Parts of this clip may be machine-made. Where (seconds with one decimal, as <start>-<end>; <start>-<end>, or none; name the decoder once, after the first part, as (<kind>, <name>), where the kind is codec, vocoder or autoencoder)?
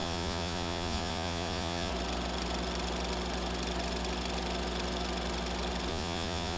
0.0-1.9 (vocoder, Vocos); 5.9-6.6